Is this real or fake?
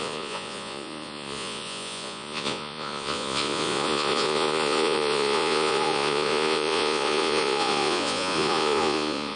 fake